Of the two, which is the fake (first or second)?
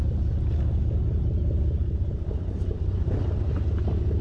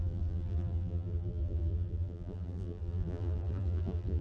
second